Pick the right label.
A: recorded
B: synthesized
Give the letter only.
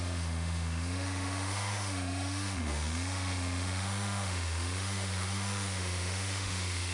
B